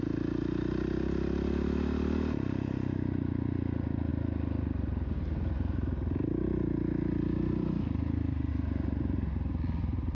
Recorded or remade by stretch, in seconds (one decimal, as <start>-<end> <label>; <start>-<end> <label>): 0.0-10.1 recorded